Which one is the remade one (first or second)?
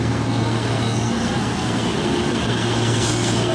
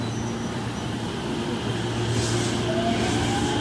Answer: first